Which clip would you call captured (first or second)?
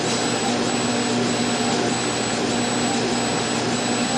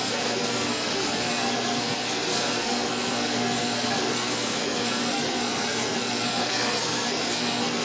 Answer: first